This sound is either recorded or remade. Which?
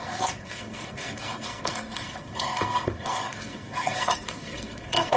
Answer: remade